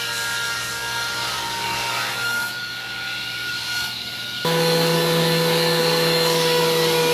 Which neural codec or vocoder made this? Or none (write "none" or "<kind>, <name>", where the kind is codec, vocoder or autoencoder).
codec, DAC